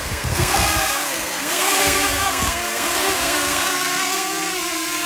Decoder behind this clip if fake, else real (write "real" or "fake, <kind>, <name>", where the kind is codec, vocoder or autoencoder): fake, codec, SNAC